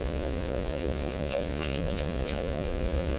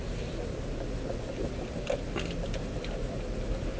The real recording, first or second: second